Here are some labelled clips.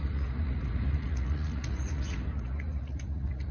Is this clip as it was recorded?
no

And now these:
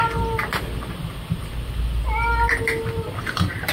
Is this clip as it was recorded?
yes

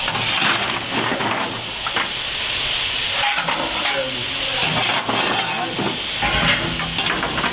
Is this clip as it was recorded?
yes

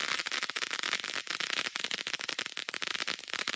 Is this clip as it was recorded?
yes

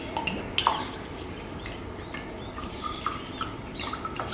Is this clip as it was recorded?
yes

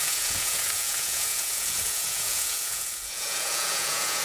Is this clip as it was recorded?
no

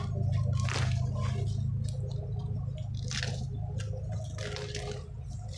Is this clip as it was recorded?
yes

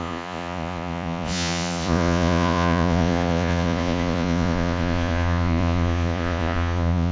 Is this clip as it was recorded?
no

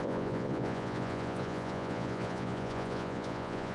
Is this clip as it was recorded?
no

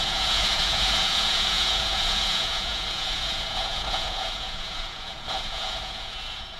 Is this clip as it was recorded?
no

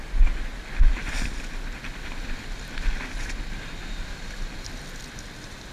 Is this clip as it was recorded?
yes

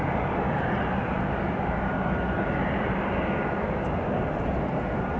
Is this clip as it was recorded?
yes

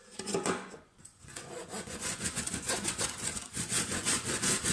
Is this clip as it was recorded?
no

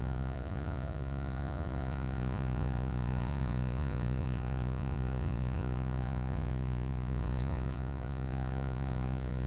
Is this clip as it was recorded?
no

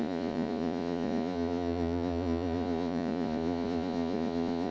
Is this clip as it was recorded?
no